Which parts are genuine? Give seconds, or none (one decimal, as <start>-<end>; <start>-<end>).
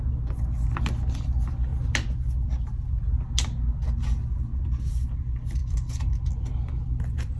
0.0-1.7; 2.2-5.6; 6.3-7.4